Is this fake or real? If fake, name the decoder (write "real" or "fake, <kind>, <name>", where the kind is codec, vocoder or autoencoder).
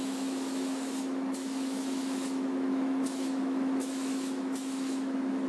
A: fake, autoencoder, DAC-VAE